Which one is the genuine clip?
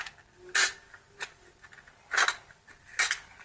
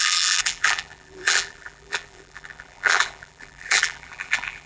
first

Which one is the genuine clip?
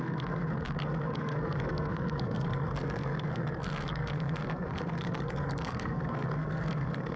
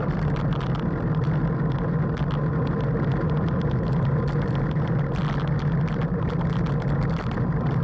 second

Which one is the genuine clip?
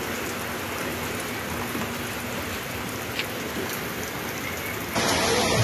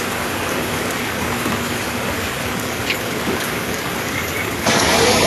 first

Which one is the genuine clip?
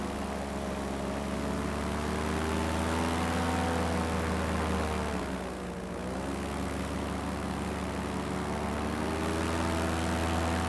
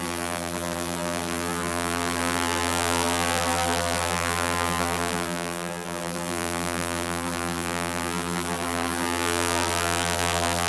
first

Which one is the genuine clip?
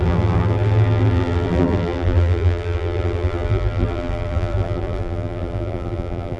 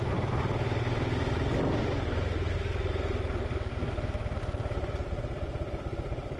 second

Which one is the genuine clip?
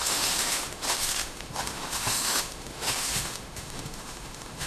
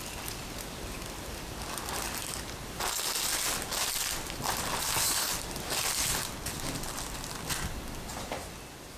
second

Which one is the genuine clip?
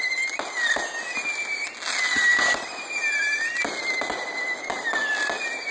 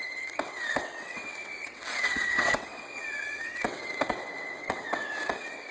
first